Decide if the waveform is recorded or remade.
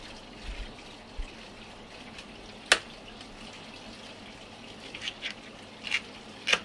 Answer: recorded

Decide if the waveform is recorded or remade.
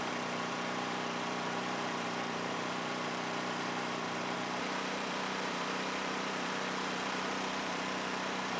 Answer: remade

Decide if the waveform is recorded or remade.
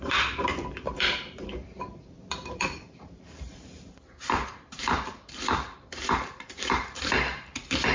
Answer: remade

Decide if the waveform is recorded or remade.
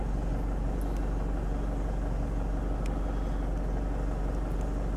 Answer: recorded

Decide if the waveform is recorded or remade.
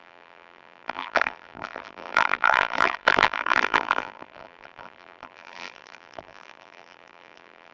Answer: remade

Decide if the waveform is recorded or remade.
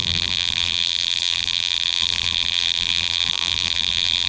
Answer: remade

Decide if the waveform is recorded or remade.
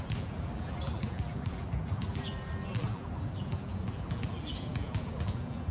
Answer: remade